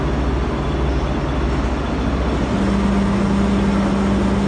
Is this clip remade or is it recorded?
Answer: recorded